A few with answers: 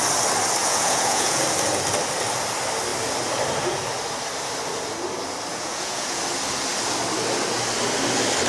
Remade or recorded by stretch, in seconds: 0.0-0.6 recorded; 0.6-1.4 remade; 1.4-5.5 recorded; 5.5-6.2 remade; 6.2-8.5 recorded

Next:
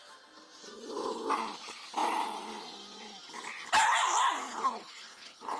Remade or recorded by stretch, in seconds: 0.0-4.5 recorded; 4.5-5.6 remade

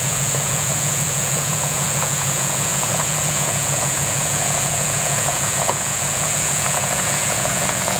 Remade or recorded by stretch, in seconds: 0.0-8.0 remade